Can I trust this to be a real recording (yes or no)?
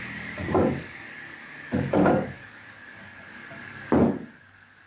no